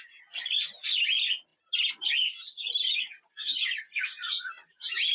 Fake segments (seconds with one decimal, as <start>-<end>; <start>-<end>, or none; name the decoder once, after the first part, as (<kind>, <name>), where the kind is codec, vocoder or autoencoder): 0.0-5.1 (vocoder, BigVGAN v2)